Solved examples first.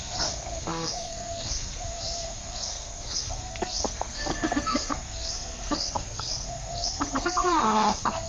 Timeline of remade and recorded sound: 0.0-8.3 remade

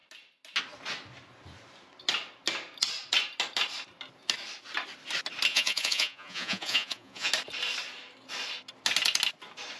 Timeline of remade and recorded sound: 0.0-5.5 recorded; 5.5-7.3 remade; 7.3-9.8 recorded

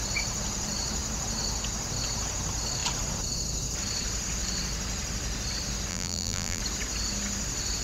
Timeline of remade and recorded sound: 0.0-5.9 recorded; 5.9-6.6 remade; 6.6-7.8 recorded

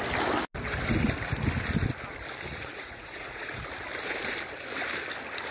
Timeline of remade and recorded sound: 0.0-2.5 recorded; 2.5-3.5 remade; 3.5-5.5 recorded

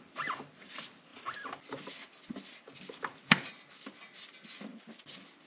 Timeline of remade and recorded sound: 0.0-5.5 recorded

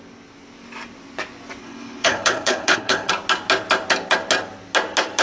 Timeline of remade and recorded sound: 0.0-1.6 recorded; 1.6-3.1 remade; 3.1-5.2 recorded

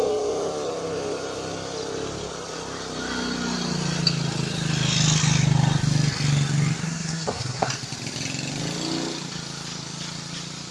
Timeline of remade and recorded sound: 0.0-6.8 recorded; 6.8-7.7 remade; 7.7-10.7 recorded